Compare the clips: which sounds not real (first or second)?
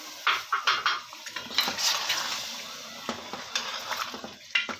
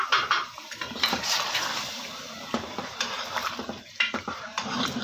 second